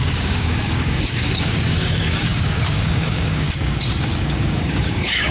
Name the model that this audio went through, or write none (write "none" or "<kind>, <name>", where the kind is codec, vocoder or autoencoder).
codec, DAC